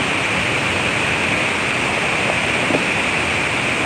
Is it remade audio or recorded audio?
recorded